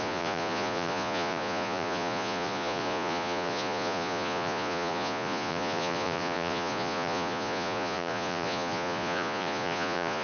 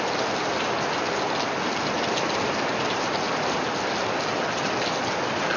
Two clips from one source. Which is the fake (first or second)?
first